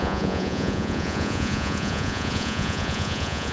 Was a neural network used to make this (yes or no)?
yes